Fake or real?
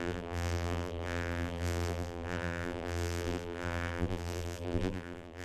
fake